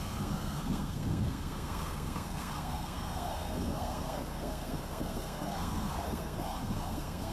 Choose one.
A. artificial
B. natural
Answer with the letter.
A